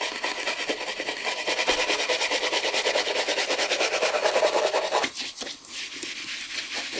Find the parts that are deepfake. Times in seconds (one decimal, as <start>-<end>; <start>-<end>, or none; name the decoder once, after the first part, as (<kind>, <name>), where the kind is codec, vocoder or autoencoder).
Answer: none